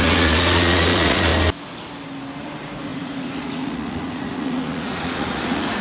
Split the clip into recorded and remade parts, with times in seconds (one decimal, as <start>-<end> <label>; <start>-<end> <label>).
0.0-1.3 remade; 1.3-2.4 recorded; 2.4-5.8 remade